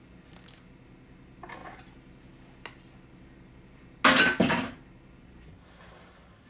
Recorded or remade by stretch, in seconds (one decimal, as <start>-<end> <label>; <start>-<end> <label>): 0.0-6.5 recorded